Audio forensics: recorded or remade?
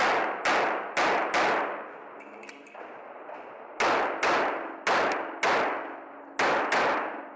recorded